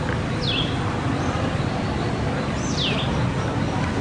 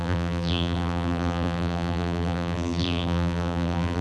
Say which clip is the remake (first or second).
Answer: second